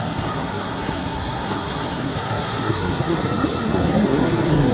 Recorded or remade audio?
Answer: remade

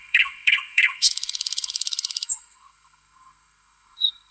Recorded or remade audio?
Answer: remade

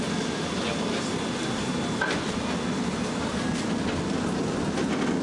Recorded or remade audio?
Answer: recorded